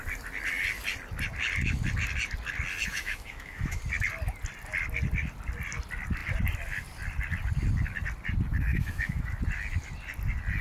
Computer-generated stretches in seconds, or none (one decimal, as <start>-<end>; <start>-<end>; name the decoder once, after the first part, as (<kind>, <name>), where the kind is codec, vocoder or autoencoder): 2.9-3.8 (autoencoder, DAC-VAE); 8.7-9.3